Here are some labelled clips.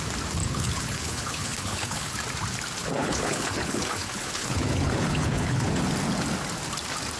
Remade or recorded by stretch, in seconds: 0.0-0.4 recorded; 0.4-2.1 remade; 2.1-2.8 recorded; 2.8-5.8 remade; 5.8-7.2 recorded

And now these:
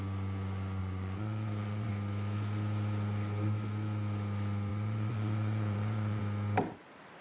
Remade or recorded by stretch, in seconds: 0.0-0.8 recorded; 0.8-1.9 remade; 1.9-4.7 recorded; 4.7-6.2 remade; 6.2-7.2 recorded

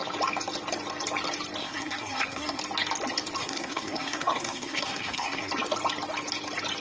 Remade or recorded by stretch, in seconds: 0.0-1.6 recorded; 1.6-2.6 remade; 2.6-3.4 recorded; 3.4-5.5 remade; 5.5-6.8 recorded

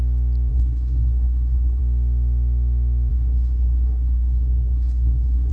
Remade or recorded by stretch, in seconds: 0.0-0.5 recorded; 0.5-1.8 remade; 1.8-3.1 recorded; 3.1-5.5 remade

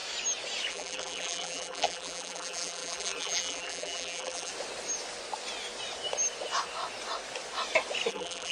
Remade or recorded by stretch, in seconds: 0.0-0.7 recorded; 0.7-4.5 remade; 4.5-8.1 recorded; 8.1-8.5 remade